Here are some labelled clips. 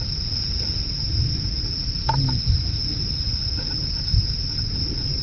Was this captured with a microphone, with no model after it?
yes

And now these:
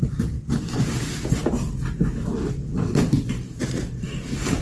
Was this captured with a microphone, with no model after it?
yes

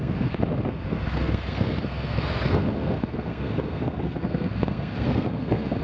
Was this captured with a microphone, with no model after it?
no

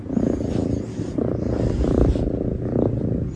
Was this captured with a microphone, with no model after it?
yes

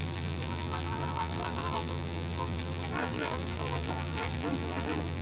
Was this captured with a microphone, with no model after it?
no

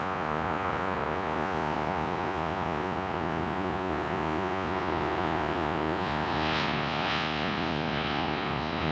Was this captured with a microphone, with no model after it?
no